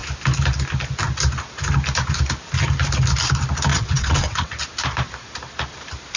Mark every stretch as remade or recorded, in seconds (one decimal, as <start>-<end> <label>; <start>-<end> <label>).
0.0-3.7 recorded; 3.7-4.6 remade; 4.6-6.2 recorded